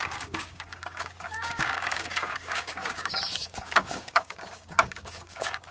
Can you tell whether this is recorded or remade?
remade